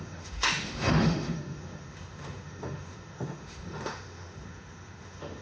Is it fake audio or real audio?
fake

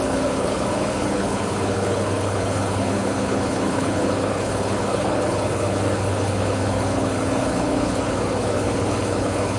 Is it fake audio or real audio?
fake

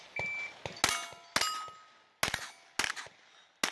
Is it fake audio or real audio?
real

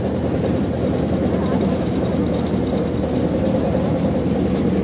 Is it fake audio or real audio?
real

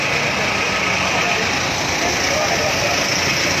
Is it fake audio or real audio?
real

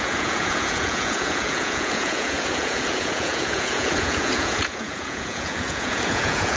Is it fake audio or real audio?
fake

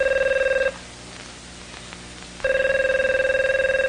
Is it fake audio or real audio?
real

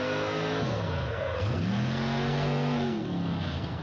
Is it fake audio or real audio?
fake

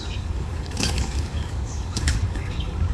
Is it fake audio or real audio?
fake